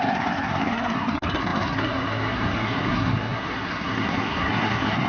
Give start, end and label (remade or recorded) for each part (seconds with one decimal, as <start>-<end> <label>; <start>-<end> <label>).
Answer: 0.0-5.1 remade